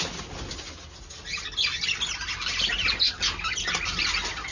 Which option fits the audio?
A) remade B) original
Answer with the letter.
B